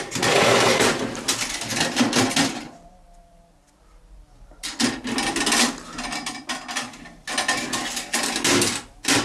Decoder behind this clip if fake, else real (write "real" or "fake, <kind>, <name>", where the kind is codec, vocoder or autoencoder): real